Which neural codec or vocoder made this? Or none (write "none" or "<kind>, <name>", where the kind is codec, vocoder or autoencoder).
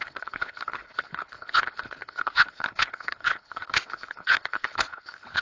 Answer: codec, HILCodec